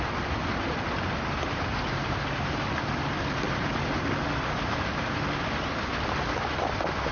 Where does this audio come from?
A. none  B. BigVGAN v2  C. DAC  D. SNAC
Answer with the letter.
A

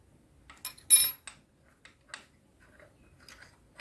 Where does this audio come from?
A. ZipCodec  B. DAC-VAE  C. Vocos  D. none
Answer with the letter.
D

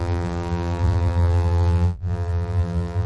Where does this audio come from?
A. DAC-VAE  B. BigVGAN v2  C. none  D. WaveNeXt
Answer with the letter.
B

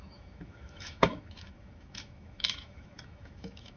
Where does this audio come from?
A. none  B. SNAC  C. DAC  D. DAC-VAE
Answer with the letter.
D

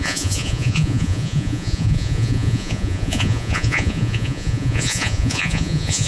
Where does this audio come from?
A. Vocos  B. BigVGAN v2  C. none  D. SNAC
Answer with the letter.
A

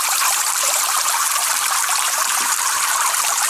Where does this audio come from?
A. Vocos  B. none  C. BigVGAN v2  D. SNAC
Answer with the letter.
C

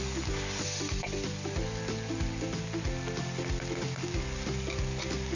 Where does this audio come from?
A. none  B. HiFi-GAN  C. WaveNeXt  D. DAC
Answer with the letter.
A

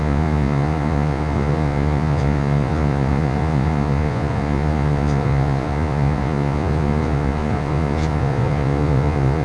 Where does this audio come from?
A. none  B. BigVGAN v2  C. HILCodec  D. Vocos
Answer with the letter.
D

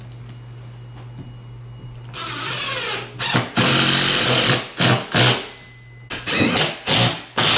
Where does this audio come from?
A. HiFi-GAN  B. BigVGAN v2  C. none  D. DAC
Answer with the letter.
C